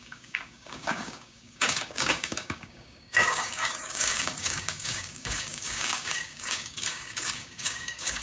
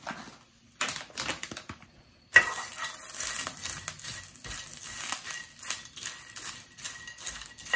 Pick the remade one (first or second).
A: first